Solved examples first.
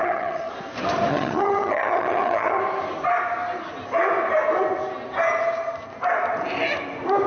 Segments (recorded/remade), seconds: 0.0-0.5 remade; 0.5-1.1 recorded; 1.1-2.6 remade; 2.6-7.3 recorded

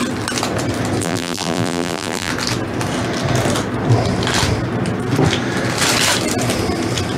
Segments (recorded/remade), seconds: 0.0-1.0 recorded; 1.0-2.3 remade; 2.3-7.2 recorded

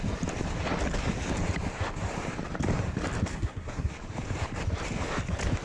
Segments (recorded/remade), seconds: 0.0-3.3 recorded; 3.3-3.9 remade; 3.9-5.6 recorded

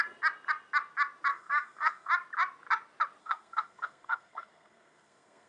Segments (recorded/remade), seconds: 0.0-1.3 recorded; 1.3-2.1 remade; 2.1-3.2 recorded; 3.2-5.5 remade

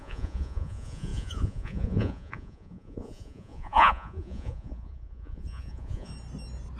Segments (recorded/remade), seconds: 0.0-6.1 remade; 6.1-6.8 recorded

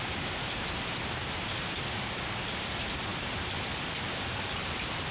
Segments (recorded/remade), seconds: 0.0-5.1 recorded